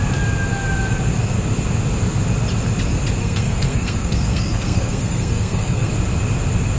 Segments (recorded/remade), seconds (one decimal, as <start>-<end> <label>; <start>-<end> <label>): 0.0-3.2 recorded; 3.2-5.9 remade; 5.9-6.8 recorded